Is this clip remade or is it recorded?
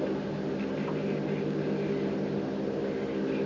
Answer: recorded